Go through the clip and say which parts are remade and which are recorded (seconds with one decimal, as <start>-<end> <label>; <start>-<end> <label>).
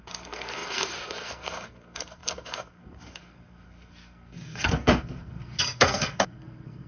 0.0-6.9 remade